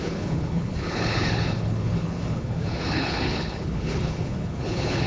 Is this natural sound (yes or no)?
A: no